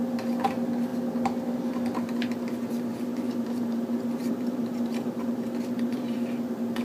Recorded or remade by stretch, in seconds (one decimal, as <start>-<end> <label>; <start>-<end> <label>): 0.0-2.9 recorded; 2.9-6.8 remade